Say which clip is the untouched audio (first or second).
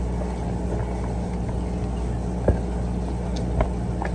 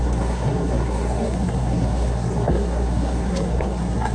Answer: first